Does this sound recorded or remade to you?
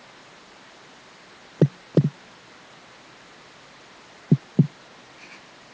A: recorded